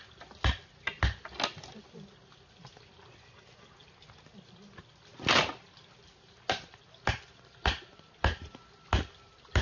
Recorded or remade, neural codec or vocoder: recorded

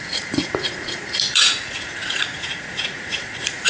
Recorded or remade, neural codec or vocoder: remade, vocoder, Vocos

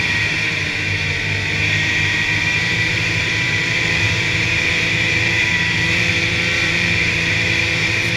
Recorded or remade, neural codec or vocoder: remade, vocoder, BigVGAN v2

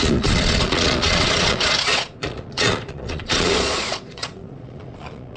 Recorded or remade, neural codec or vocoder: remade, vocoder, Vocos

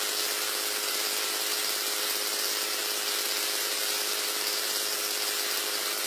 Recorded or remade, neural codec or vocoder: recorded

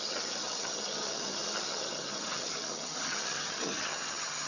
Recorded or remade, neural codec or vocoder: remade, vocoder, HiFi-GAN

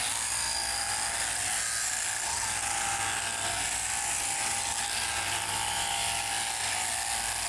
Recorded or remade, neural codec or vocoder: recorded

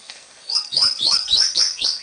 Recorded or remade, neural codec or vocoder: remade, codec, SNAC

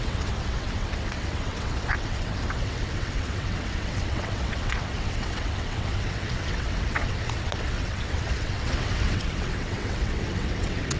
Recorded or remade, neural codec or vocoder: remade, vocoder, WaveNeXt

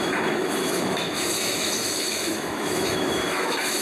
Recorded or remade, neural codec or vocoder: remade, autoencoder, DAC-VAE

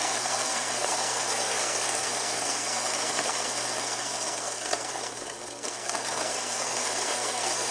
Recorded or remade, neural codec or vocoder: remade, codec, SNAC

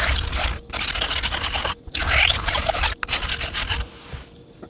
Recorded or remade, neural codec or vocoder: recorded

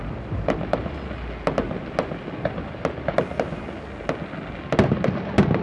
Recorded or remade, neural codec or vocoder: recorded